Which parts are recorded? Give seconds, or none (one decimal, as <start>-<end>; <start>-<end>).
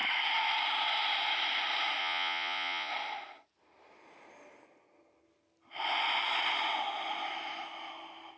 0.0-2.0; 2.9-8.4